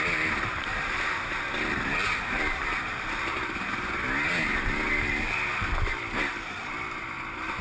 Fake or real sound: real